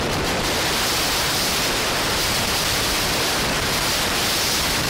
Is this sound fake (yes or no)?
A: yes